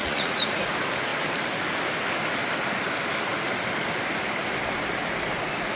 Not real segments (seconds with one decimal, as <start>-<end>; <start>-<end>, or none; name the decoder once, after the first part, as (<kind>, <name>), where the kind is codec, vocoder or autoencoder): 0.0-0.6 (vocoder, Vocos)